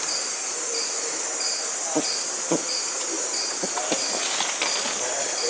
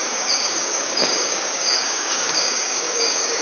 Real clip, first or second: first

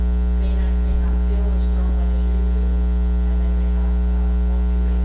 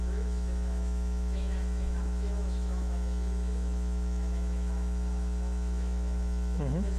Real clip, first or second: first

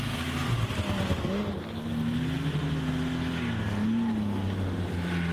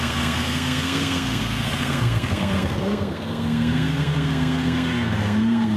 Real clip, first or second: first